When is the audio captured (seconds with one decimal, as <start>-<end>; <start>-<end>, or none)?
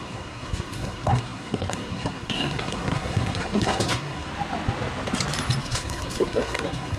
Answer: 4.3-5.6